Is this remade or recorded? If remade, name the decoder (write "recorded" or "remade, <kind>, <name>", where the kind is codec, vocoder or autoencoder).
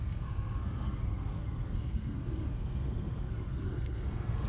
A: remade, codec, SNAC